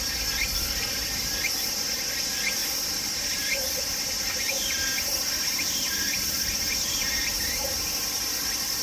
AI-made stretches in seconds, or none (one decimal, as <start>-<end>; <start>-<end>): 0.0-2.6; 3.9-8.8